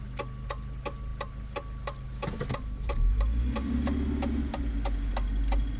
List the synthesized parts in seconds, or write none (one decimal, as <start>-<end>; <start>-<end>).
none